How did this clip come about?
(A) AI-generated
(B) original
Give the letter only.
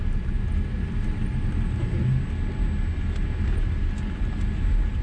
B